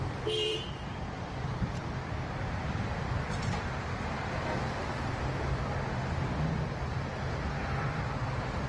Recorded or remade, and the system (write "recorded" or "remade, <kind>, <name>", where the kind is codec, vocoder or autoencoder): remade, vocoder, BigVGAN v2